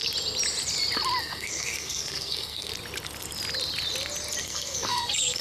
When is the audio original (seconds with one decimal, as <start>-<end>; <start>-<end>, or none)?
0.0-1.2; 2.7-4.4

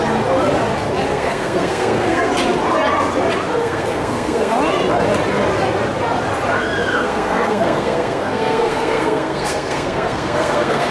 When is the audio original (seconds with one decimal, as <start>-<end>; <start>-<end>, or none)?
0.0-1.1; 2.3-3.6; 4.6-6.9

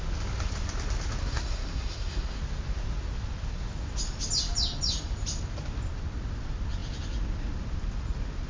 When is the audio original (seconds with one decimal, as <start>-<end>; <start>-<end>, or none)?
0.0-1.2; 2.4-8.5

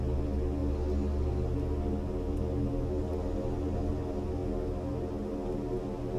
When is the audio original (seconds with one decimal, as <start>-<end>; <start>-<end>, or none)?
0.0-6.2

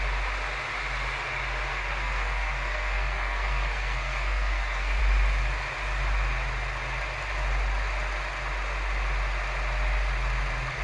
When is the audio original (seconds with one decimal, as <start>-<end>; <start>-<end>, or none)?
0.0-1.7; 5.0-10.8

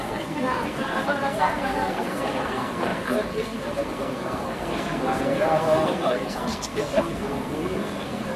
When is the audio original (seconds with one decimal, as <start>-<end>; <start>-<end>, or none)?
none